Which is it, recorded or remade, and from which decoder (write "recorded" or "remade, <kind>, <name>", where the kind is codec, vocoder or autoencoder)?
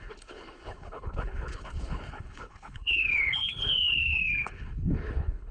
remade, codec, HILCodec